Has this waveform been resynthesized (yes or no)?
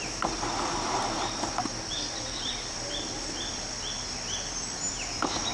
no